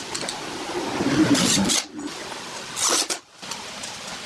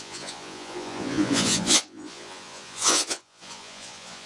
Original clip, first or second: first